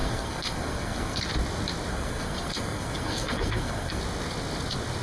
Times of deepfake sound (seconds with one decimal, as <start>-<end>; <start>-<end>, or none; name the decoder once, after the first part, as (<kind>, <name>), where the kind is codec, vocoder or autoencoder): 0.0-1.3 (codec, SNAC); 1.9-4.0